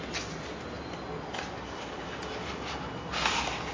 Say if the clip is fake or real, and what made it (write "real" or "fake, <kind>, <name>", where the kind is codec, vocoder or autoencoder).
real